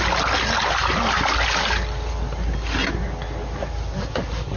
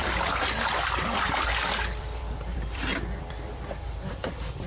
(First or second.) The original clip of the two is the first